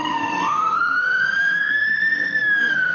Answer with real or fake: fake